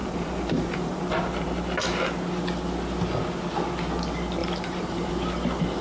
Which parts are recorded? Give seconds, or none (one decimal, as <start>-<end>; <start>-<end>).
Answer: 1.0-4.4; 5.1-5.8